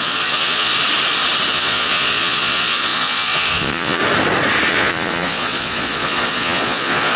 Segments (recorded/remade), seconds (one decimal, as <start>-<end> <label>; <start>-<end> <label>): 0.0-0.7 remade; 0.7-1.5 recorded; 1.5-4.0 remade; 4.0-4.7 recorded; 4.7-7.2 remade